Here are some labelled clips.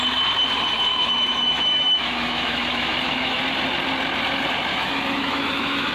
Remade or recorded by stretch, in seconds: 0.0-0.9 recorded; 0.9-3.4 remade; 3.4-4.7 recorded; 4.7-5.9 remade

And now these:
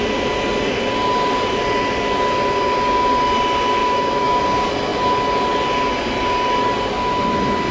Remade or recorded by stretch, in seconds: 0.0-3.8 recorded; 3.8-4.4 remade; 4.4-7.7 recorded

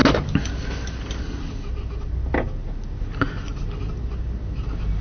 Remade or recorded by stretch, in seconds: 0.0-5.0 recorded

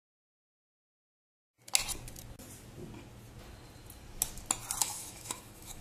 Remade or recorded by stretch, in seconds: 0.0-4.8 recorded; 4.8-5.8 remade

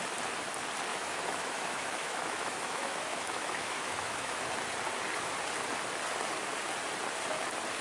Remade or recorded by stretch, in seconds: 0.0-0.9 recorded; 0.9-4.4 remade; 4.4-7.8 recorded

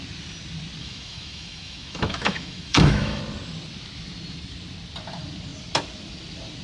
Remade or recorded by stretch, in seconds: 0.0-0.8 recorded; 0.8-3.2 remade; 3.2-6.6 recorded